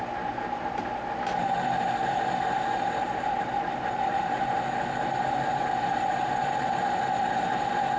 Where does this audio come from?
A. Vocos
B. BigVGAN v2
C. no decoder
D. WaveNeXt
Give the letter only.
C